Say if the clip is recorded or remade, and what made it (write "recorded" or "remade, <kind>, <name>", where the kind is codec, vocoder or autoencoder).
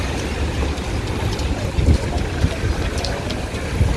recorded